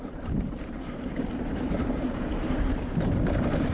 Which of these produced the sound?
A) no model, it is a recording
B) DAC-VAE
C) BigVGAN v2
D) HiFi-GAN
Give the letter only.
C